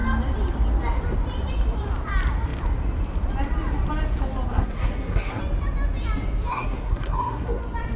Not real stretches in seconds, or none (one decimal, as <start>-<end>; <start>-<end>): 4.5-5.4; 6.5-7.6